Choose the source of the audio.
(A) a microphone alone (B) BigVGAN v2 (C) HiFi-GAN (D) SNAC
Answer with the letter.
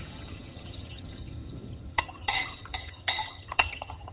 C